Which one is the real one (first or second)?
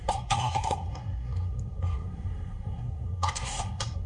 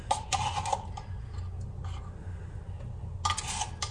second